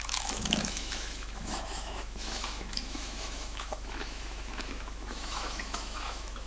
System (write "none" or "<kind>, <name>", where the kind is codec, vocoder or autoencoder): autoencoder, DAC-VAE